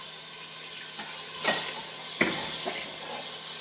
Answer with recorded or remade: recorded